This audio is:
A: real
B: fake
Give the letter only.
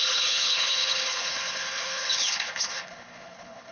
B